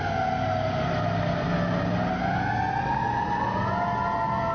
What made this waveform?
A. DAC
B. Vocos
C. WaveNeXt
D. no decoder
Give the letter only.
D